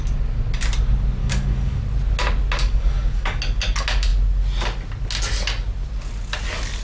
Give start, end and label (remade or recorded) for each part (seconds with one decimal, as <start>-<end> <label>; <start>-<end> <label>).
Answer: 0.0-1.2 recorded; 1.2-1.8 remade; 1.8-2.6 recorded; 2.6-3.4 remade; 3.4-6.8 recorded